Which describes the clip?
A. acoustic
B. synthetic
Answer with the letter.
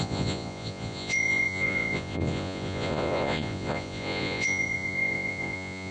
B